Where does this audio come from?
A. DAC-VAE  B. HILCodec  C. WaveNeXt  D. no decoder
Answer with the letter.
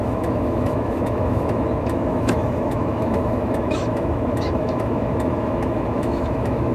A